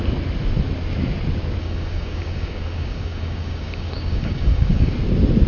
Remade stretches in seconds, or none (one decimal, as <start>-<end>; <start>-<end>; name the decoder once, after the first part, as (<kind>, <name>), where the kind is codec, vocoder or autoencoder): 1.6-4.9 (codec, DAC)

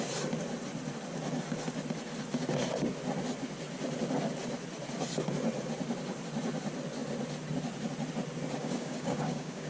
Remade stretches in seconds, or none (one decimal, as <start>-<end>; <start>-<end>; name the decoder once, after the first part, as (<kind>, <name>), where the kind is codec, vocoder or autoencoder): 8.6-9.7 (codec, DAC)